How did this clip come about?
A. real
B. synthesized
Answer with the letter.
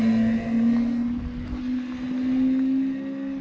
A